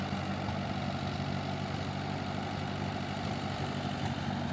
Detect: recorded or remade recorded